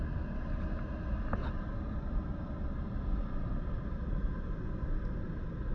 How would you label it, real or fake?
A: real